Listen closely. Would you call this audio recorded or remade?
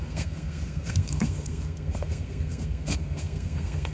remade